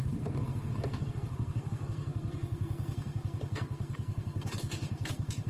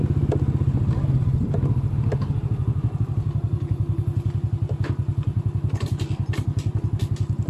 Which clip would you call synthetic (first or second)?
first